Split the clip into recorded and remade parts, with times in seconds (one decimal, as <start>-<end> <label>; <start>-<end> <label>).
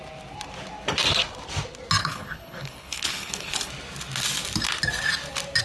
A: 0.0-2.0 recorded; 2.0-3.7 remade; 3.7-5.6 recorded